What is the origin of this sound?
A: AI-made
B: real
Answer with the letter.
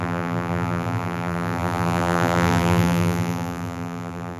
A